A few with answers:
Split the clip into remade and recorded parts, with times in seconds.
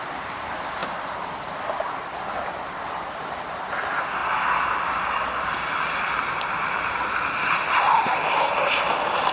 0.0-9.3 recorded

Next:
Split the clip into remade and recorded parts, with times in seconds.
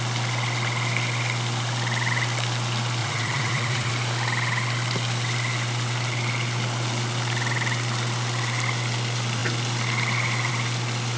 0.0-3.0 recorded; 3.0-3.9 remade; 3.9-11.2 recorded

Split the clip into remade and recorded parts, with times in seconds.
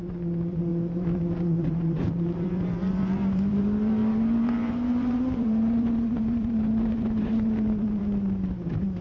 0.0-0.7 recorded; 0.7-3.6 remade; 3.6-4.0 recorded; 4.0-8.0 remade; 8.0-9.0 recorded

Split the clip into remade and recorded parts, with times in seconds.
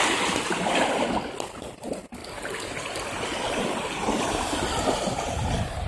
0.0-5.9 recorded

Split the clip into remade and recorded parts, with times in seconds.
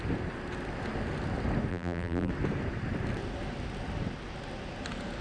0.0-1.7 recorded; 1.7-2.3 remade; 2.3-5.2 recorded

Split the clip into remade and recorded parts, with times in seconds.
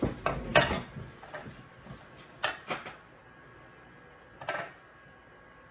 0.0-5.7 recorded